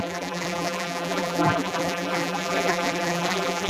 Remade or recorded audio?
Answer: remade